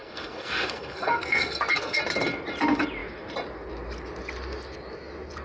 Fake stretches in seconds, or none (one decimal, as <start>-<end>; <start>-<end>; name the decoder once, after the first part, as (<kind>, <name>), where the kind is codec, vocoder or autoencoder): 0.0-2.0 (codec, SNAC)